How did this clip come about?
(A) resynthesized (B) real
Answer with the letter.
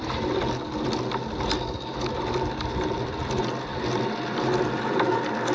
B